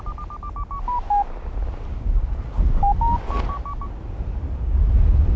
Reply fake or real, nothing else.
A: real